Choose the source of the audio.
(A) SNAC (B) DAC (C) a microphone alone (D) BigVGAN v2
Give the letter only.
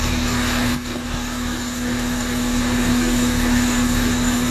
B